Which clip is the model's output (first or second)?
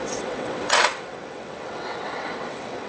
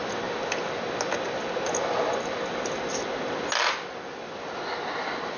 first